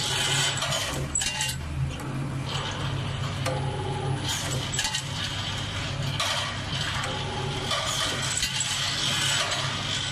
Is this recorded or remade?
recorded